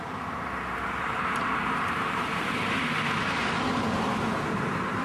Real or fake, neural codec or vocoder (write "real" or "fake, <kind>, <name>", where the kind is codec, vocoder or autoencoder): fake, vocoder, BigVGAN v2